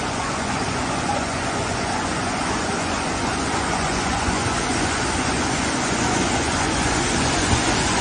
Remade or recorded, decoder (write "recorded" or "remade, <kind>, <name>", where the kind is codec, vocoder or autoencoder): remade, vocoder, Vocos